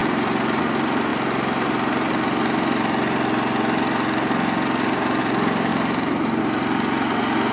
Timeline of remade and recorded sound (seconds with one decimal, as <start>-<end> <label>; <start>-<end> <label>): 0.0-0.6 remade; 0.6-5.7 recorded; 5.7-6.4 remade; 6.4-7.5 recorded